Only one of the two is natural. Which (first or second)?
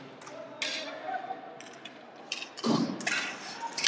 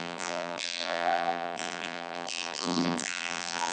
first